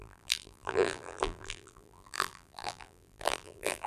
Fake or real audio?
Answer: fake